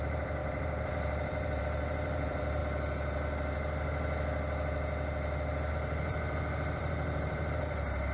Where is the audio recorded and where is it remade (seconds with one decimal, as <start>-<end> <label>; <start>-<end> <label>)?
0.0-2.6 remade; 2.6-5.7 recorded; 5.7-8.1 remade